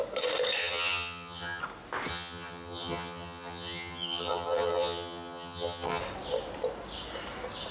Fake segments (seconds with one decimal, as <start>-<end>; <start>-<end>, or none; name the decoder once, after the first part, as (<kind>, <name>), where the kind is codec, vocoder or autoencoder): 0.6-1.6 (vocoder, HiFi-GAN); 2.1-6.0